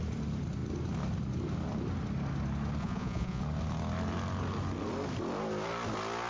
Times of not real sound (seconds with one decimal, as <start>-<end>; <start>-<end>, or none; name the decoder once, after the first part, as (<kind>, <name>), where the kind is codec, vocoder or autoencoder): 2.8-3.4 (vocoder, Vocos)